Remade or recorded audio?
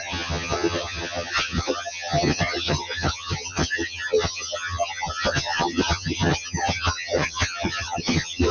remade